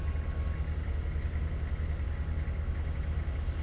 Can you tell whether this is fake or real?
real